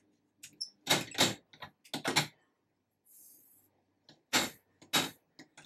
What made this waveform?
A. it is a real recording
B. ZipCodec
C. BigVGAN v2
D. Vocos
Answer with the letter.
A